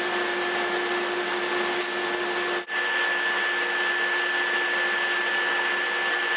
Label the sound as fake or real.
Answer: real